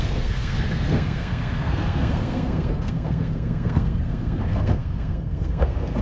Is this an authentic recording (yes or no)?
no